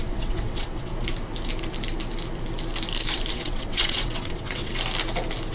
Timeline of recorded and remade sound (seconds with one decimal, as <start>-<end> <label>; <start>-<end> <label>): 0.0-0.9 remade; 0.9-3.3 recorded; 3.3-4.7 remade; 4.7-5.5 recorded